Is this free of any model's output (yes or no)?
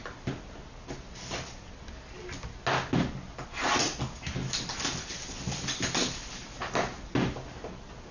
yes